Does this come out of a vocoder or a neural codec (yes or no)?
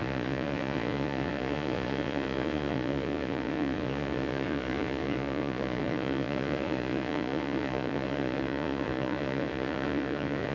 yes